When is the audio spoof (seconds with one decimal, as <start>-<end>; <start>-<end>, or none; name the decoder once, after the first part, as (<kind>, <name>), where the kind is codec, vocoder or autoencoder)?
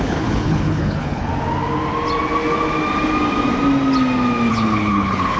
0.0-1.3 (codec, HILCodec); 4.5-5.4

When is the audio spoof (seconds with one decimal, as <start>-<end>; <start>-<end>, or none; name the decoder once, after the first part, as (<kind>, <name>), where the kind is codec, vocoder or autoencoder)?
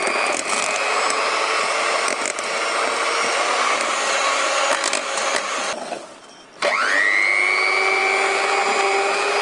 none